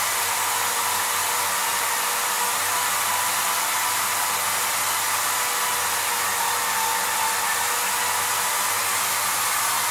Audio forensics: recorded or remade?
recorded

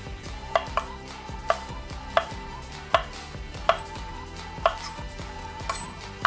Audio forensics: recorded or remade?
recorded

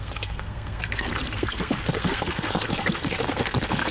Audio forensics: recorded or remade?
remade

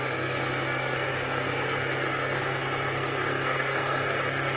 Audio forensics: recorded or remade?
remade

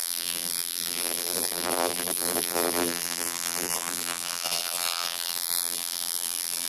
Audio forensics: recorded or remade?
remade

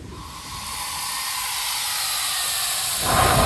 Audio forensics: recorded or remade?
recorded